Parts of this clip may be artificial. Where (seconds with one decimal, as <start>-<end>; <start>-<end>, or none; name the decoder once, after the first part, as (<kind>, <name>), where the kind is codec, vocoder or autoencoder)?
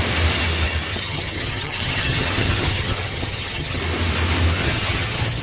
0.9-3.8 (vocoder, HiFi-GAN); 4.6-5.4